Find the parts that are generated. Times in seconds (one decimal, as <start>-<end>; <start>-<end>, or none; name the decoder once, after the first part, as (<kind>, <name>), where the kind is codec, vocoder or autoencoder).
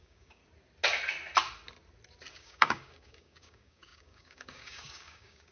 0.0-0.4 (codec, DAC); 2.3-5.5